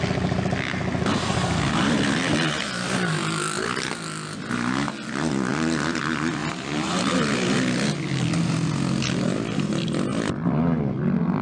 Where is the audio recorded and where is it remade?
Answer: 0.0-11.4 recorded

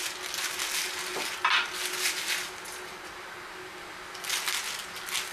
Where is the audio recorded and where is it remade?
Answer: 0.0-5.3 recorded

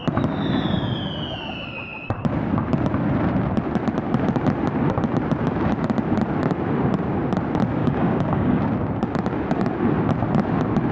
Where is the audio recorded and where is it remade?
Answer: 0.0-7.8 recorded; 7.8-8.6 remade; 8.6-10.9 recorded

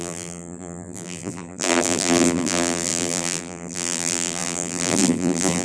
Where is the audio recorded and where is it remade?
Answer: 0.0-5.6 remade

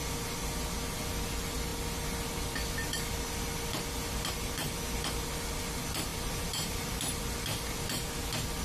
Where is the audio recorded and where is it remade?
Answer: 0.0-6.1 recorded; 6.1-7.8 remade; 7.8-8.6 recorded